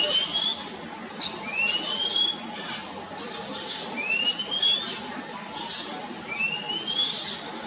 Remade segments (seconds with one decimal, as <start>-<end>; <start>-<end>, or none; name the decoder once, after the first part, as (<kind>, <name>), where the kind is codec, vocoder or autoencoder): none

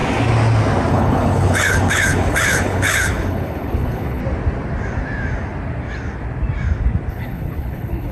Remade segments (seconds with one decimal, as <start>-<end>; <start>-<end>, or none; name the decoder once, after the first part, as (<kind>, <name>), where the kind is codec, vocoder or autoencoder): 0.9-4.2 (codec, HILCodec); 7.1-8.1

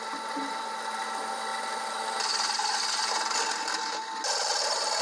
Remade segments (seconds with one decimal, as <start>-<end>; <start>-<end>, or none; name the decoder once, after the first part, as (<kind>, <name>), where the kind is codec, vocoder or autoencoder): none